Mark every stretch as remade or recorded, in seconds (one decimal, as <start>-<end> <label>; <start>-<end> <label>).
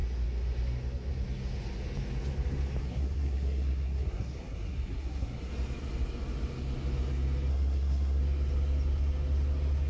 0.0-2.8 recorded; 2.8-5.5 remade; 5.5-7.5 recorded; 7.5-8.2 remade; 8.2-9.9 recorded